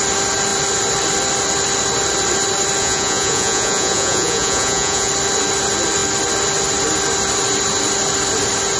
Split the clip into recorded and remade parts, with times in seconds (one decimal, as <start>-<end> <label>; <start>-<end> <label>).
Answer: 0.0-2.8 recorded; 2.8-5.1 remade; 5.1-8.8 recorded